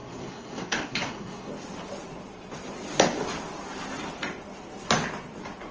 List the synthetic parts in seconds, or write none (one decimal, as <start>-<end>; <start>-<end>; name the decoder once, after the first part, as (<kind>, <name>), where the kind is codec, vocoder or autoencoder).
0.0-1.5 (codec, SNAC)